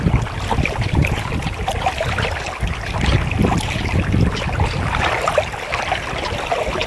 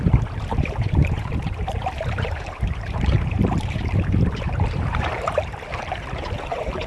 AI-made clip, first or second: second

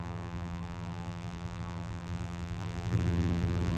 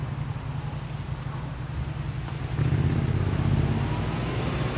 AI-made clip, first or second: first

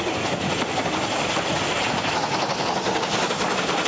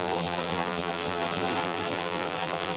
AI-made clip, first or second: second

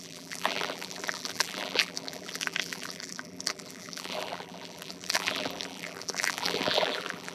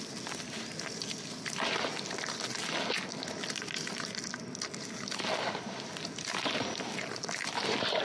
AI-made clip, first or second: first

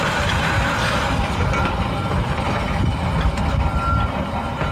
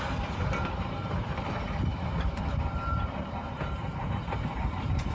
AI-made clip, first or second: second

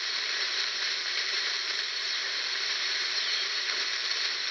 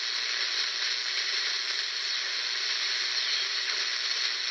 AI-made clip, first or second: first